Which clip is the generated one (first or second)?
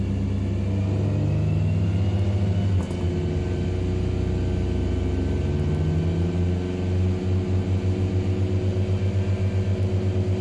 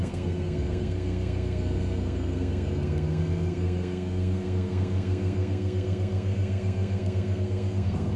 second